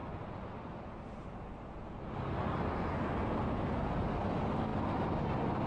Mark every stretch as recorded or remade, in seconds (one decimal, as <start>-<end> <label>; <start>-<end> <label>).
0.0-5.7 recorded